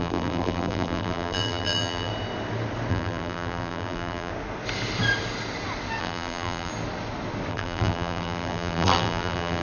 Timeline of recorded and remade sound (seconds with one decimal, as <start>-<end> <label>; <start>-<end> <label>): 0.0-2.1 remade; 2.1-2.9 recorded; 2.9-4.3 remade; 4.3-6.0 recorded; 6.0-6.7 remade; 6.7-7.5 recorded; 7.5-9.6 remade